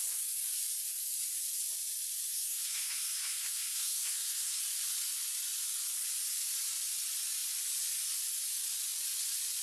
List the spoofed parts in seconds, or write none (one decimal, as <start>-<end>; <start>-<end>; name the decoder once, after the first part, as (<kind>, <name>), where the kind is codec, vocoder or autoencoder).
2.3-4.6 (codec, SNAC)